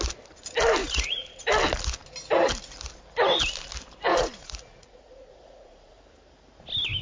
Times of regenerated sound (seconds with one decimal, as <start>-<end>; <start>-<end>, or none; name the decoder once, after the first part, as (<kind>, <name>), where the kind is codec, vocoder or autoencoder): 0.8-1.4 (vocoder, Vocos); 4.1-6.0